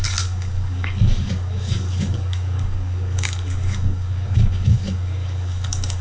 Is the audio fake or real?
fake